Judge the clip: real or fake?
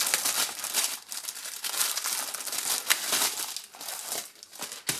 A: real